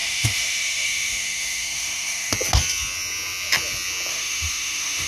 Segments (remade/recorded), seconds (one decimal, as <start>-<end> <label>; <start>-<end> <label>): 0.0-2.3 remade; 2.3-4.1 recorded; 4.1-5.1 remade